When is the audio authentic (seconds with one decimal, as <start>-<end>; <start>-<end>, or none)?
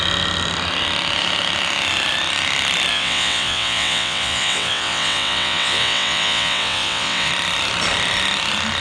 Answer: 0.0-2.9; 7.3-8.8